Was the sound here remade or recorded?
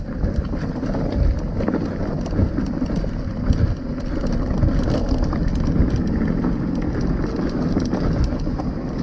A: recorded